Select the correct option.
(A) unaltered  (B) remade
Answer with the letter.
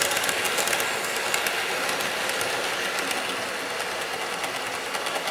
A